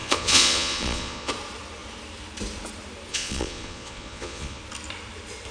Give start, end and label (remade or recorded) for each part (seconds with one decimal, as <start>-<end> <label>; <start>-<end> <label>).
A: 0.0-1.3 remade; 1.3-3.1 recorded; 3.1-4.6 remade; 4.6-5.5 recorded